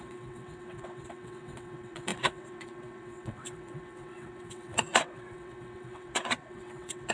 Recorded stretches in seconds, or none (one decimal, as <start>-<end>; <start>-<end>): none